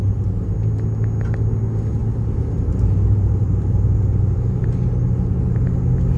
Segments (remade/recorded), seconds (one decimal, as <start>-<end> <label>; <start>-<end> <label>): 0.0-0.5 remade; 0.5-2.0 recorded; 2.0-5.6 remade; 5.6-6.2 recorded